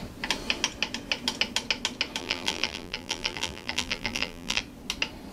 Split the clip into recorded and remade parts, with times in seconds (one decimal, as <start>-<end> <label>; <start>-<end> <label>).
0.0-2.2 recorded; 2.2-4.6 remade; 4.6-5.3 recorded

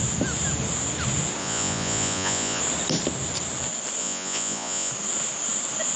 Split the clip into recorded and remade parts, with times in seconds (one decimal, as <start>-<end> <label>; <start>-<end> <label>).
0.0-1.4 recorded; 1.4-2.6 remade; 2.6-4.0 recorded; 4.0-4.9 remade; 4.9-6.0 recorded

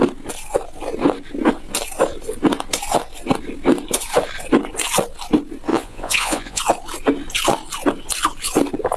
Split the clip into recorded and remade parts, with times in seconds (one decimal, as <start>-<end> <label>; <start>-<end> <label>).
0.0-5.7 recorded; 5.7-6.6 remade; 6.6-9.0 recorded

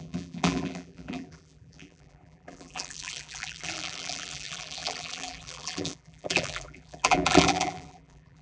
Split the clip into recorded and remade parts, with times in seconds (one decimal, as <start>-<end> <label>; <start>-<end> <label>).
0.0-8.4 remade